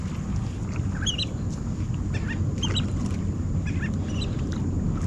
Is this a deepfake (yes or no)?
no